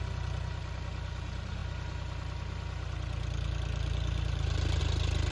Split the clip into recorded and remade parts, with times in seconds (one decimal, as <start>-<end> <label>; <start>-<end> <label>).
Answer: 0.0-5.3 recorded